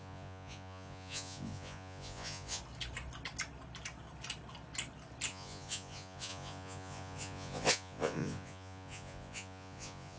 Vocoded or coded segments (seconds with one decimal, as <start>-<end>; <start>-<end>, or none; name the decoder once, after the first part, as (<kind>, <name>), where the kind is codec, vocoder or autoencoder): 0.0-2.6 (vocoder, Vocos); 5.3-10.2